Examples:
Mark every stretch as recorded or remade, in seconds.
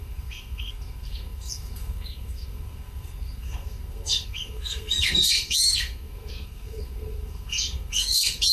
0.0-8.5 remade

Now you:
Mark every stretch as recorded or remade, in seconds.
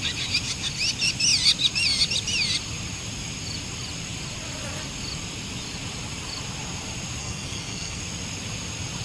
0.0-7.2 recorded; 7.2-8.0 remade; 8.0-9.0 recorded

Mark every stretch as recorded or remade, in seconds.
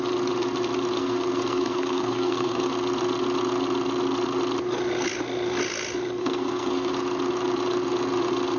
0.0-1.0 recorded; 1.0-2.7 remade; 2.7-6.2 recorded; 6.2-6.9 remade; 6.9-8.6 recorded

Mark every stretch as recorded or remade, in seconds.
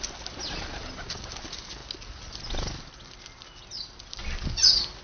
0.0-5.0 recorded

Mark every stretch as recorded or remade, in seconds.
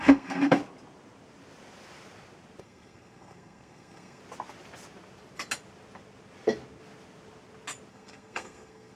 0.0-0.6 remade; 0.6-2.6 recorded; 2.6-4.2 remade; 4.2-7.9 recorded; 7.9-9.0 remade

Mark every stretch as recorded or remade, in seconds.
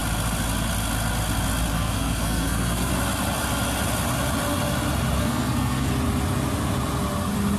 0.0-1.7 recorded; 1.7-2.9 remade; 2.9-5.2 recorded; 5.2-5.9 remade; 5.9-7.6 recorded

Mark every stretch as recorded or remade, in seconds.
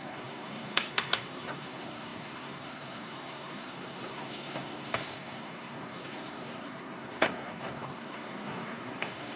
0.0-9.4 remade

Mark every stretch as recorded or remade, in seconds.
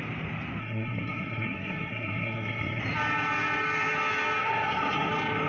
0.0-0.6 recorded; 0.6-2.8 remade; 2.8-4.4 recorded; 4.4-5.1 remade; 5.1-5.5 recorded